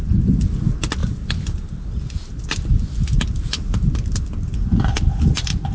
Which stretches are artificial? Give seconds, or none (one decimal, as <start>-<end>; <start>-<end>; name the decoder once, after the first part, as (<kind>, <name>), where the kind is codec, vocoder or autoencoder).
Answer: none